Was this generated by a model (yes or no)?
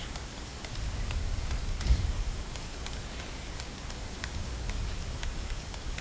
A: yes